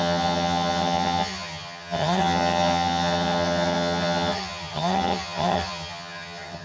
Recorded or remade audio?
remade